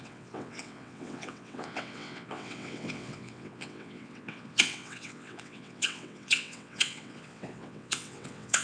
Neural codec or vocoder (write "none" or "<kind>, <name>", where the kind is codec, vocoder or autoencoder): vocoder, WaveNeXt